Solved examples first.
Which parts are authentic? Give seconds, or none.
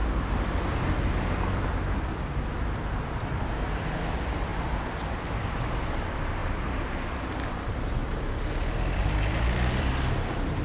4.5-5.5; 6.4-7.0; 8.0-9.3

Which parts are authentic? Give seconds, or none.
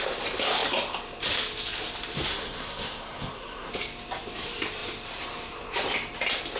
0.0-2.3; 3.7-6.6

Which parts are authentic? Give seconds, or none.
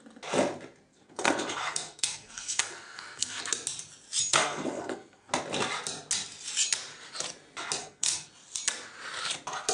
0.0-0.9; 3.4-4.3; 5.3-7.8; 8.3-9.7